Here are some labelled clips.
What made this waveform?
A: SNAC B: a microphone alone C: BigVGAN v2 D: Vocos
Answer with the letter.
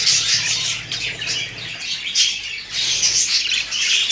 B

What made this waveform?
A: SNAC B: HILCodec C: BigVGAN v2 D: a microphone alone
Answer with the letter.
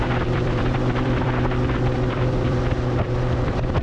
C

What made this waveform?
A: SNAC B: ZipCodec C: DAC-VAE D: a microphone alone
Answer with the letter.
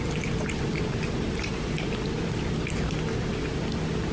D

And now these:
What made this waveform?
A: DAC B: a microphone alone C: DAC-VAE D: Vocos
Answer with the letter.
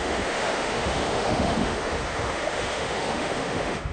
C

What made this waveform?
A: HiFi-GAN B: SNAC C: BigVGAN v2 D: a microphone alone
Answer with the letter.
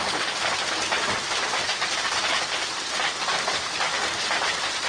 D